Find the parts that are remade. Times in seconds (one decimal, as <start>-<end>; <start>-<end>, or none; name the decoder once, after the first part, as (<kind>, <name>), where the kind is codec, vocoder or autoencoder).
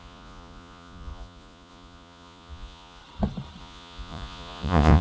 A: 0.0-3.0 (vocoder, Vocos); 3.6-5.0